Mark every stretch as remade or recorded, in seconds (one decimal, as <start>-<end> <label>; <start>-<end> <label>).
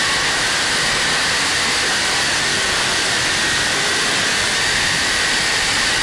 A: 0.0-2.9 recorded; 2.9-6.0 remade